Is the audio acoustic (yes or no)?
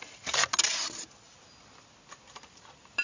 yes